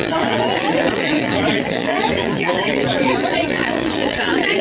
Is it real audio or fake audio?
fake